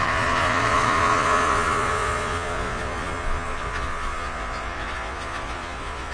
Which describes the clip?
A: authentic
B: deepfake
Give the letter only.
B